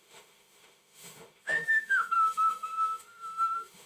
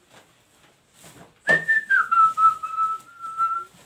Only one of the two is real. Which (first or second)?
second